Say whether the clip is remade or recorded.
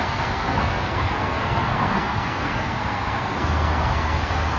remade